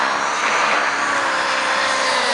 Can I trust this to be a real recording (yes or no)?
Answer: no